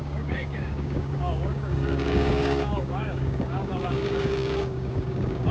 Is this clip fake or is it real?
fake